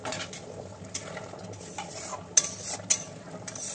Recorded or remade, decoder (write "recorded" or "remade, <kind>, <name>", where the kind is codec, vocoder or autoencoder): recorded